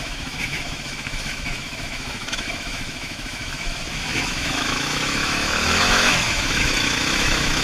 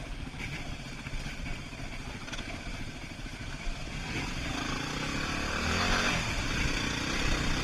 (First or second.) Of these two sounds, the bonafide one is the second